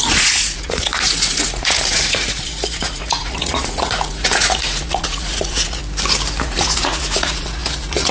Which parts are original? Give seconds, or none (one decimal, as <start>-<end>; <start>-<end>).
5.8-6.4